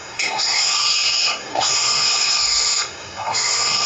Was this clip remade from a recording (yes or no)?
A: yes